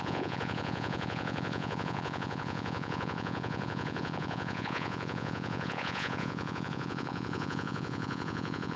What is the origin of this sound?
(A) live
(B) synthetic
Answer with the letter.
B